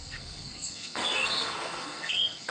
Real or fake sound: fake